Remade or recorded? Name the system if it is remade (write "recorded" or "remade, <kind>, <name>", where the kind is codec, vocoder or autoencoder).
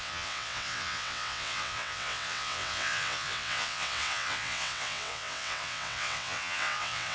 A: remade, vocoder, WaveNeXt